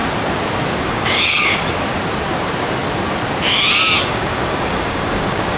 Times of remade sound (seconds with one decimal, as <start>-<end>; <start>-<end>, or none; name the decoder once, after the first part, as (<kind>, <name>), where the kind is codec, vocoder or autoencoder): 0.8-1.5 (codec, DAC); 4.1-5.6